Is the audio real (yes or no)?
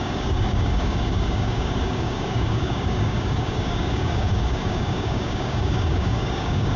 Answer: no